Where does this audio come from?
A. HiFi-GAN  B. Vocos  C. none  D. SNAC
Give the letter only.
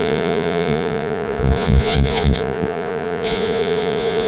B